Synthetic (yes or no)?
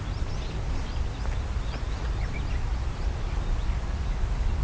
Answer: no